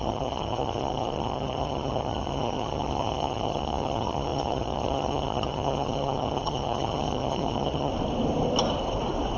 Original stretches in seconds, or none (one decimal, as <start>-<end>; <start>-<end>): 7.9-9.4